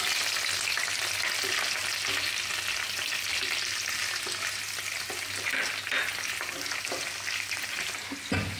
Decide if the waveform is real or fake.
real